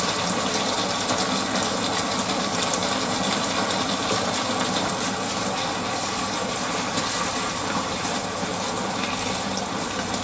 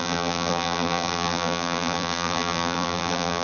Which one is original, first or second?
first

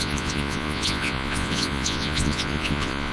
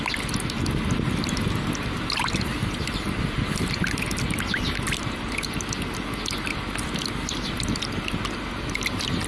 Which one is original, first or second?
second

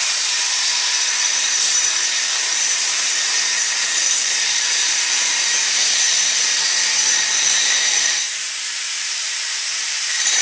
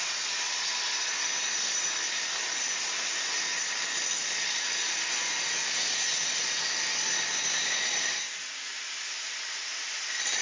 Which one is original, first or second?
second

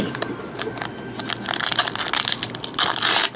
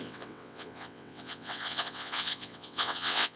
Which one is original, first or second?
first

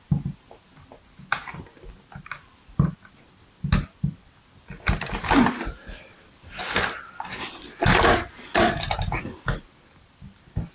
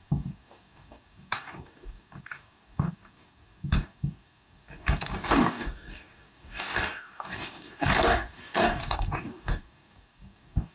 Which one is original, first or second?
first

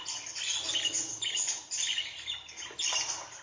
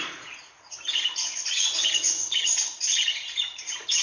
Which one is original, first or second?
first